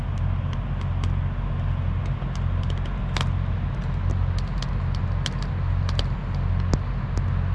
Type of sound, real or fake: real